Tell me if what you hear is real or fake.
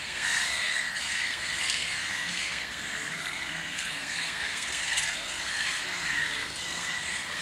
fake